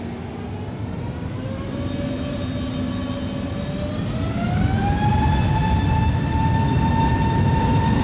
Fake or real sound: real